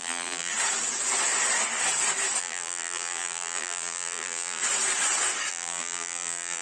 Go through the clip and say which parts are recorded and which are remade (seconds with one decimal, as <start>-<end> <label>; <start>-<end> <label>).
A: 0.0-0.5 remade; 0.5-2.4 recorded; 2.4-4.6 remade; 4.6-5.5 recorded; 5.5-6.6 remade